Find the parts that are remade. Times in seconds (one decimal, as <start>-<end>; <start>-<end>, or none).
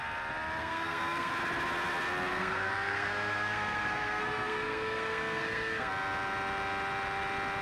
0.6-1.3; 2.3-5.9